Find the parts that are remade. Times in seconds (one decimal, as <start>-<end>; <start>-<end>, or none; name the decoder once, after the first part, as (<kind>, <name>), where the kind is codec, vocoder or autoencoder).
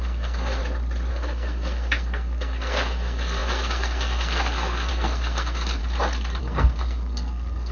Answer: 0.0-0.6 (codec, SNAC); 1.1-5.8; 6.4-7.7